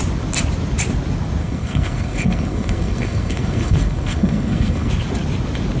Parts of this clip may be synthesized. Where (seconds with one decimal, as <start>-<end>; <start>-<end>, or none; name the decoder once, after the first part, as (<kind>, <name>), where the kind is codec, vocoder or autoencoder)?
1.4-4.9 (codec, SNAC)